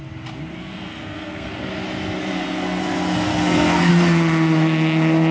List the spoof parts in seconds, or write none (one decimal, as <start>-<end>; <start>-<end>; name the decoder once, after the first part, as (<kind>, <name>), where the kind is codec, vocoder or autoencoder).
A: 0.7-1.7 (codec, SNAC); 2.2-2.8; 3.3-3.9